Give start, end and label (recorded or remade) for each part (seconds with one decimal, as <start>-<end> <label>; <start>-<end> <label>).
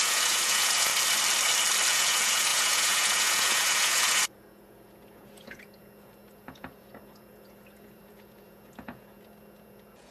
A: 0.0-0.9 remade; 0.9-1.9 recorded; 1.9-10.1 remade